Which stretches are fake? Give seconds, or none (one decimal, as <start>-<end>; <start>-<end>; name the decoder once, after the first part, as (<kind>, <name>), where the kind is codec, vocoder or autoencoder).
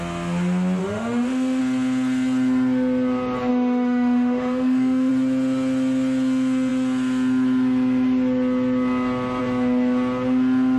0.8-1.6 (autoencoder, DAC-VAE); 3.5-5.1